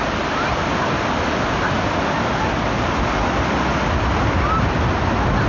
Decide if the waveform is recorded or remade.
recorded